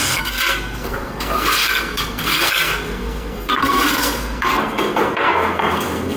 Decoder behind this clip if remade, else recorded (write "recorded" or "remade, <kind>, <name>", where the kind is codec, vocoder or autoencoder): remade, codec, SNAC